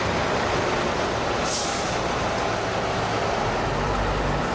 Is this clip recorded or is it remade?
recorded